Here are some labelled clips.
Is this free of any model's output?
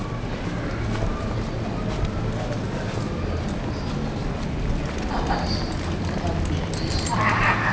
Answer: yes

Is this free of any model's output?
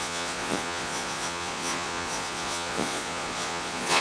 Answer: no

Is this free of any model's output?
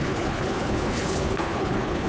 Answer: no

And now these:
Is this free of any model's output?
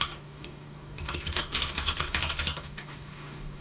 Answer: no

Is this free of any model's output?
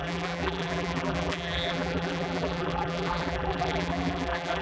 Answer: no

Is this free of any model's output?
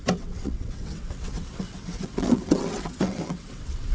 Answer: no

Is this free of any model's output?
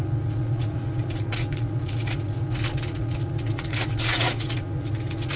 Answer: no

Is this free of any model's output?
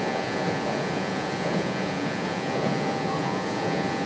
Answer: no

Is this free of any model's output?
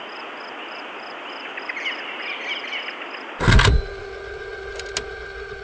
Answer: yes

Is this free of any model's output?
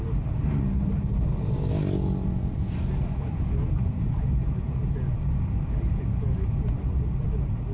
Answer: yes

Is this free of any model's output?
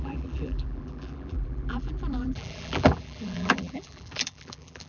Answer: no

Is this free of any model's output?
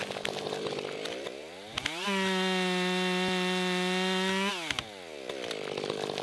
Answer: yes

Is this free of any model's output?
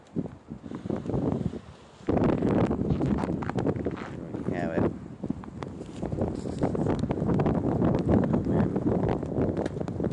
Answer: no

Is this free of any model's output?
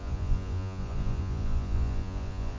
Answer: no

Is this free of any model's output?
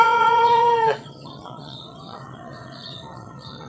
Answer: no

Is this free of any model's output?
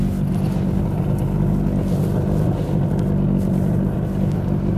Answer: yes